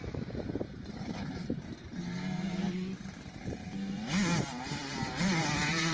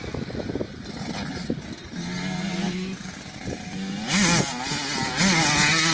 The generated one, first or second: first